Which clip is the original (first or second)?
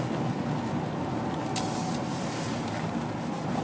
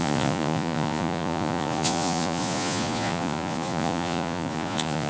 first